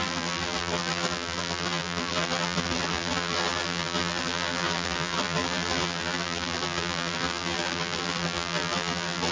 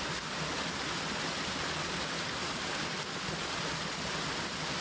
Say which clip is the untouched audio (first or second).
second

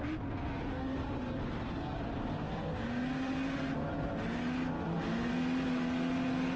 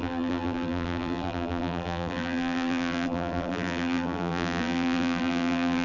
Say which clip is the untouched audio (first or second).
first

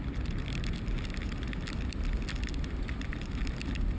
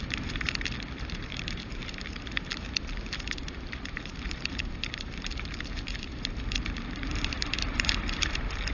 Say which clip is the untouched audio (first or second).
first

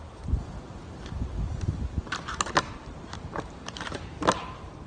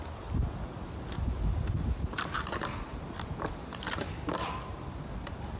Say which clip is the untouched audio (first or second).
second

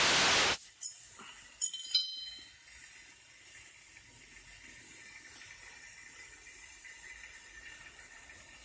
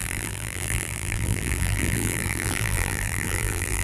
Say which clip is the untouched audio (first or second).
first